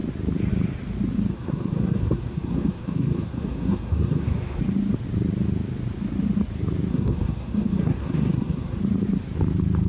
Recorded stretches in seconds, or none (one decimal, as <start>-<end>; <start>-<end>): 0.0-1.3; 4.6-6.9; 8.8-9.9